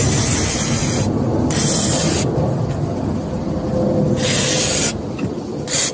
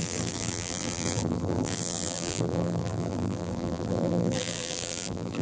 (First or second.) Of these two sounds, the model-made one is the second